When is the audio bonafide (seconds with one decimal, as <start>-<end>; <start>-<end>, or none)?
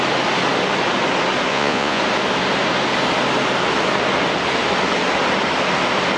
0.0-1.5; 2.0-6.2